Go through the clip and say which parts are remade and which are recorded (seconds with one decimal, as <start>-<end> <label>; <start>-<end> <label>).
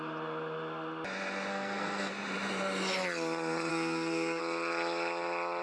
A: 0.0-1.5 recorded; 1.5-2.1 remade; 2.1-3.7 recorded; 3.7-4.4 remade; 4.4-5.6 recorded